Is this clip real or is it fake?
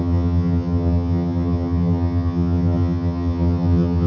fake